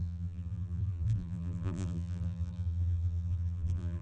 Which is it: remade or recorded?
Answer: remade